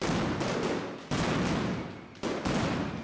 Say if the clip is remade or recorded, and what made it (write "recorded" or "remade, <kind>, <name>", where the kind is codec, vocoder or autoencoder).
recorded